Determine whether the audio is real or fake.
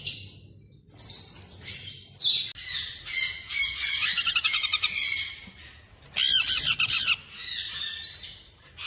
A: real